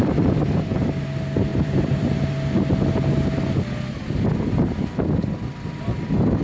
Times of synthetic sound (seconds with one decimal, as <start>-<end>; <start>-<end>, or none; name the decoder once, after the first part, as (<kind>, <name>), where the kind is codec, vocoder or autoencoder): 0.0-0.8 (vocoder, BigVGAN v2); 1.5-2.1

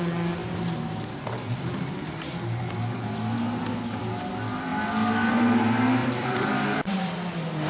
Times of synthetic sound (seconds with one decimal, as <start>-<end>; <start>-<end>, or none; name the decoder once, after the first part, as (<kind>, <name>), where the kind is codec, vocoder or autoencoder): 6.0-7.7 (vocoder, BigVGAN v2)

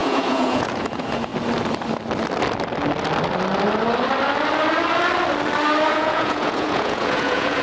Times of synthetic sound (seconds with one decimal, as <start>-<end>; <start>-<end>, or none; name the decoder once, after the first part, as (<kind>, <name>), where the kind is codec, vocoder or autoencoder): 0.0-1.3 (vocoder, Vocos); 5.9-7.6

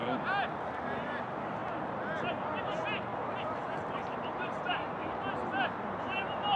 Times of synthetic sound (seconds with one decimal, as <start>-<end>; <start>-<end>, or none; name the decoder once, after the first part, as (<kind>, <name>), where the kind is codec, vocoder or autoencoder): 3.1-5.1 (vocoder, BigVGAN v2)